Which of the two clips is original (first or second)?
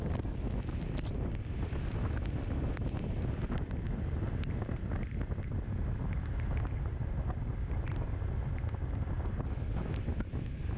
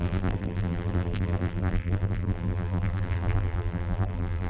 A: first